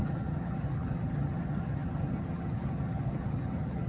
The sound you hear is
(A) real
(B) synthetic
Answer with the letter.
B